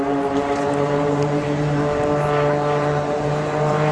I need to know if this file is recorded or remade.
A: remade